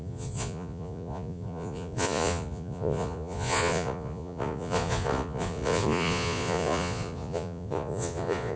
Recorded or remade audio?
remade